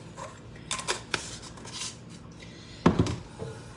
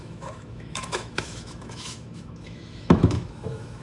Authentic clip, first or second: first